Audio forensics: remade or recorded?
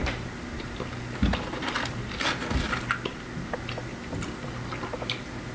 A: recorded